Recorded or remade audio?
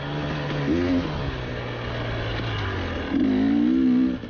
recorded